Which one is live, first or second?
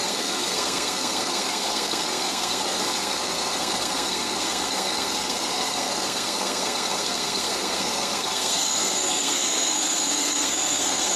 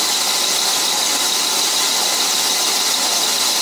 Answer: second